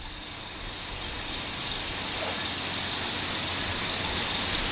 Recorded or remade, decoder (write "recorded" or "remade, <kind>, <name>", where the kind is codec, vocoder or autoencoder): recorded